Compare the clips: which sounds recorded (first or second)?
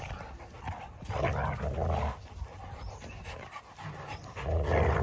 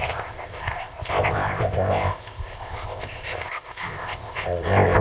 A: first